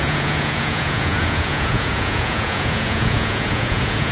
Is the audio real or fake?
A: fake